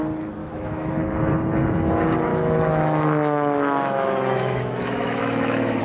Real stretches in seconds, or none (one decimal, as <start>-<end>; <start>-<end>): 0.0-0.4; 1.0-2.3